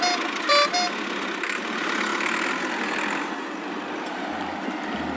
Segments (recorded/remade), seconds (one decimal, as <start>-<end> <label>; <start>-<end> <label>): 0.0-5.2 recorded